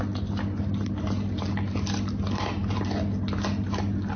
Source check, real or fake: real